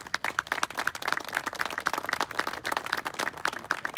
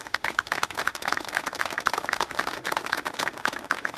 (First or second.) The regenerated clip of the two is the second